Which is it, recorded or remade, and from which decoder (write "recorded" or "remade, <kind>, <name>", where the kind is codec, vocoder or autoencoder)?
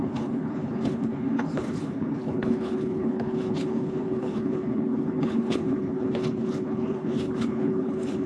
remade, codec, HILCodec